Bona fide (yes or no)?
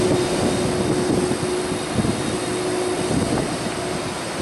yes